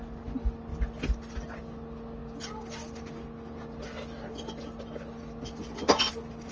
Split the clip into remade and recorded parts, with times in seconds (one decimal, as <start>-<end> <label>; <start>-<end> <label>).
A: 0.0-6.5 recorded